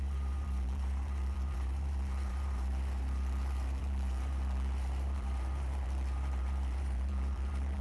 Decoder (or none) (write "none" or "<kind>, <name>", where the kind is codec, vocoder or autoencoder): vocoder, BigVGAN v2